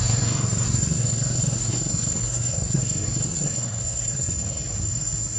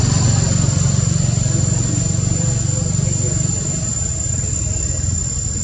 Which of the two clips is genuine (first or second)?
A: second